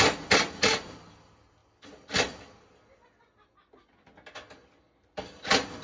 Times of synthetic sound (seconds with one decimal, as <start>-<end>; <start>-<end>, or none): none